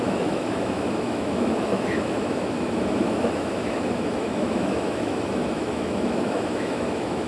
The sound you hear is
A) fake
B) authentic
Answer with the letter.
A